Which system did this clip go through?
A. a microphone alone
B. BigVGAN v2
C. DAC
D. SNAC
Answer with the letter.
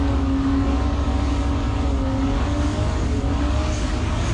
C